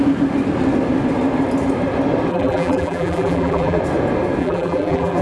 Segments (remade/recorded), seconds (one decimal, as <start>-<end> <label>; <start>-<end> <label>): 0.0-2.3 recorded; 2.3-3.8 remade; 3.8-4.4 recorded; 4.4-5.2 remade